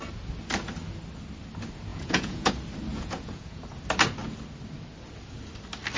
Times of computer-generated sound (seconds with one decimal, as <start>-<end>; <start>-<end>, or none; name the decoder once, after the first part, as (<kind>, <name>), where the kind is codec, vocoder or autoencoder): 1.9-2.5 (vocoder, Vocos); 2.9-3.6